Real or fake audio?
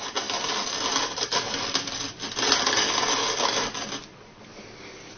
real